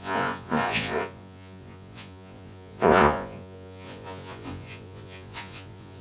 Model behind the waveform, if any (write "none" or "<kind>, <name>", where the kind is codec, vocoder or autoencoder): vocoder, Vocos